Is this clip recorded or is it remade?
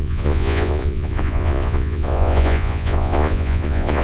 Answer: remade